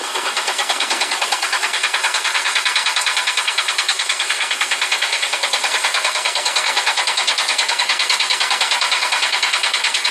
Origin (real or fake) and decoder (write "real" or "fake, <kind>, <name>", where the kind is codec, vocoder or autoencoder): fake, codec, SNAC